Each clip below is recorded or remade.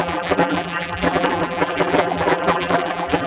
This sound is remade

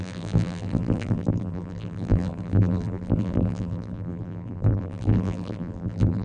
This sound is remade